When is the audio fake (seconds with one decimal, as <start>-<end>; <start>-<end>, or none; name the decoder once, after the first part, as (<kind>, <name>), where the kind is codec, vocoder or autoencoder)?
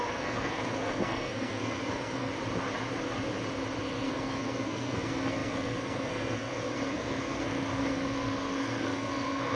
0.0-2.3 (codec, SNAC); 3.8-9.6